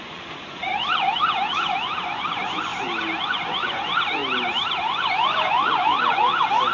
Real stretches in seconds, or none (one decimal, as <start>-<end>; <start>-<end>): 2.7-3.2; 4.2-4.8